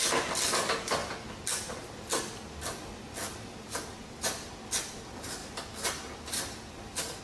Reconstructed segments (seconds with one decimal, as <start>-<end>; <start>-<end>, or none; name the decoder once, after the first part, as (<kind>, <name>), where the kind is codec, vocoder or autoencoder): none